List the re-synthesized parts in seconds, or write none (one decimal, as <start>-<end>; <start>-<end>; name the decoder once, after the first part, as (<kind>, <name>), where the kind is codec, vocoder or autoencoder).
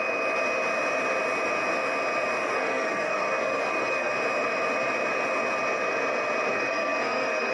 2.4-4.1 (codec, SNAC); 6.5-7.5